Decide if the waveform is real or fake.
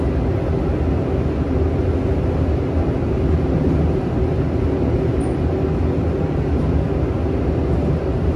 real